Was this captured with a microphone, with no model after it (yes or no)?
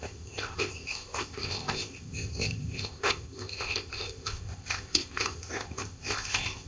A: no